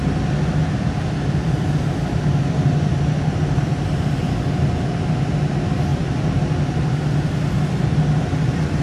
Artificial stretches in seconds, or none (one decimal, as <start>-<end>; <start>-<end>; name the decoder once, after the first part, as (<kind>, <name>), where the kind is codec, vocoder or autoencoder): 0.6-5.3 (vocoder, BigVGAN v2)